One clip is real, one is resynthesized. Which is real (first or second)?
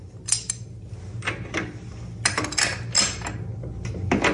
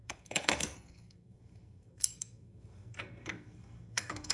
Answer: first